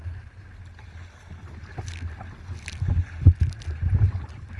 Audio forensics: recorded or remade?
recorded